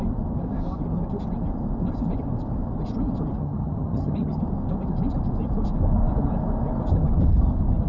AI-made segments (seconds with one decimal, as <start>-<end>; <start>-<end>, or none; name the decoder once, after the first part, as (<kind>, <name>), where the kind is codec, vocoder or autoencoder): 3.4-4.4 (vocoder, HiFi-GAN)